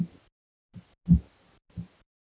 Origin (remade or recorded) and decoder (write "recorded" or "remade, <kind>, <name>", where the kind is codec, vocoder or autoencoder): recorded